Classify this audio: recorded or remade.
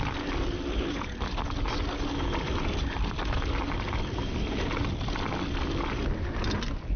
recorded